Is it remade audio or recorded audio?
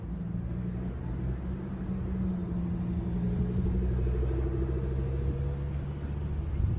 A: recorded